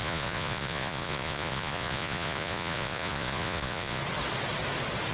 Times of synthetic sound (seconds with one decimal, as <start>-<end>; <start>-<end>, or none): 0.0-4.0